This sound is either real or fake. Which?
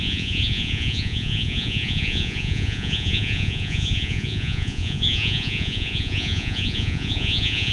fake